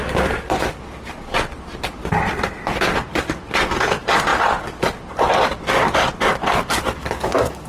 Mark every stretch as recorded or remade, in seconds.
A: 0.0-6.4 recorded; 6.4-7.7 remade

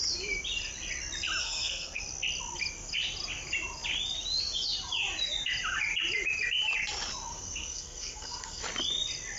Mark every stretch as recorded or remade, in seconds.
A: 0.0-1.4 recorded; 1.4-2.0 remade; 2.0-7.3 recorded; 7.3-8.6 remade; 8.6-9.4 recorded

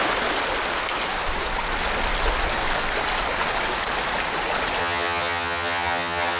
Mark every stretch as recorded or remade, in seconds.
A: 0.0-4.8 recorded; 4.8-6.4 remade

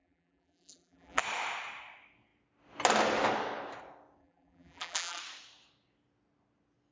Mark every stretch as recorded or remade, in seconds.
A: 0.0-1.2 remade; 1.2-4.2 recorded; 4.2-5.2 remade; 5.2-6.9 recorded

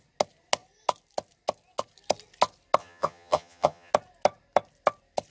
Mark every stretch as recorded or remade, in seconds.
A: 0.0-2.8 recorded; 2.8-3.9 remade; 3.9-5.3 recorded

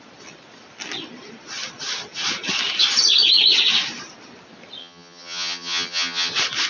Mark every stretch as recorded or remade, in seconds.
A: 0.0-4.8 recorded; 4.8-6.3 remade; 6.3-6.7 recorded